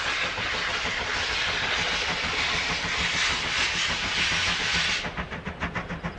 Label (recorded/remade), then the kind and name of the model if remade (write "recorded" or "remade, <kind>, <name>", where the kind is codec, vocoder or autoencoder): recorded